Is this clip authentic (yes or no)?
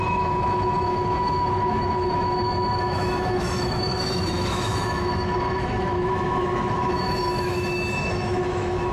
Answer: no